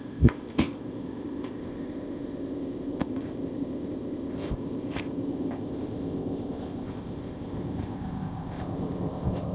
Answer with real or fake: fake